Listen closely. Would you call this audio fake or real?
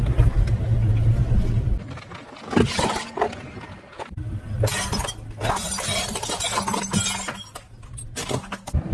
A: real